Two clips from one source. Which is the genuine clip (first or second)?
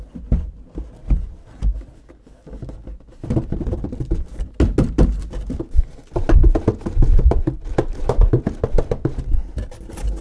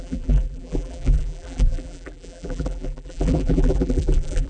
first